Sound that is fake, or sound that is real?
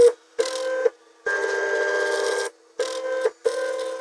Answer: real